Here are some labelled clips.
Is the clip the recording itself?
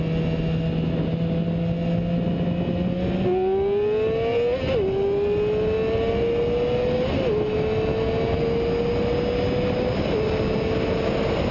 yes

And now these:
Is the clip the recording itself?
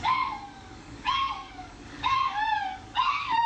no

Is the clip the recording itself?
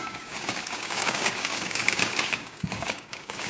no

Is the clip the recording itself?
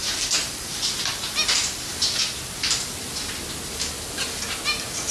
yes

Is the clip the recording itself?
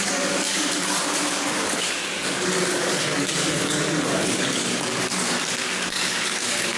no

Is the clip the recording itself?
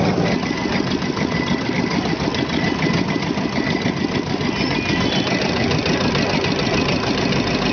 yes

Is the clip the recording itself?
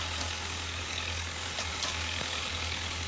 no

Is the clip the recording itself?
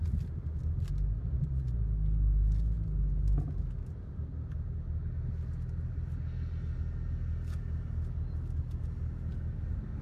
yes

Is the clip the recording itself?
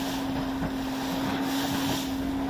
yes